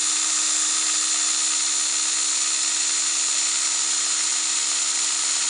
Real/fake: real